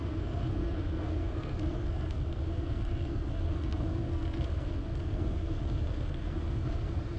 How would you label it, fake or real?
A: fake